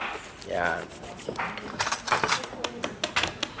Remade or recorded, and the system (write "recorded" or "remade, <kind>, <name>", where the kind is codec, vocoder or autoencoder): recorded